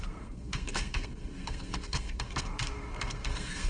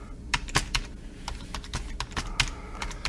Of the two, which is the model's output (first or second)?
first